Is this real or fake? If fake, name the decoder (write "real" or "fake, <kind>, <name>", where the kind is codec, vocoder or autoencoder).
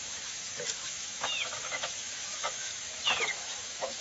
fake, autoencoder, DAC-VAE